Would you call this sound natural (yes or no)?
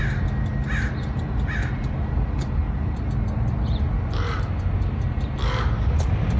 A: yes